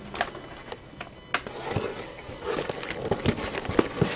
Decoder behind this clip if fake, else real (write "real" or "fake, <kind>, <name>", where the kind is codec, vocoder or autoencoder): real